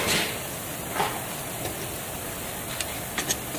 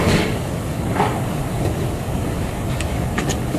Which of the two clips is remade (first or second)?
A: second